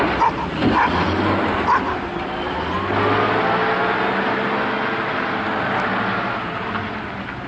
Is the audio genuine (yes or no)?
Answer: yes